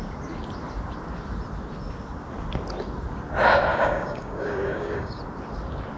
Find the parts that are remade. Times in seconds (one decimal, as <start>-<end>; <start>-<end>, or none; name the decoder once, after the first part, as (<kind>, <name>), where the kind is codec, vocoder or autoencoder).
3.7-5.2 (codec, DAC)